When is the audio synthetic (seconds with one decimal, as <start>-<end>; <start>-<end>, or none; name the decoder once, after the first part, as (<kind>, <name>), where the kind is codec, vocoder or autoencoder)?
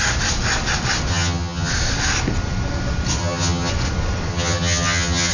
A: 1.1-1.7 (vocoder, HiFi-GAN); 3.2-3.7; 4.3-5.3